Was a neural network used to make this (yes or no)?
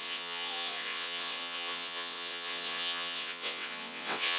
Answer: yes